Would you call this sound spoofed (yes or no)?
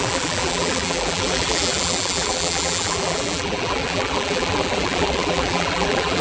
yes